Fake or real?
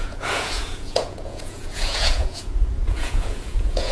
fake